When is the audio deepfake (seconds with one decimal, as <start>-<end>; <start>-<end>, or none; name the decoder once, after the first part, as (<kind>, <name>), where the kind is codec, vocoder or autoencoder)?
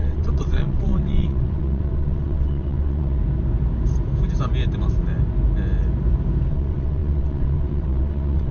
0.0-3.2 (vocoder, WaveNeXt); 6.5-8.5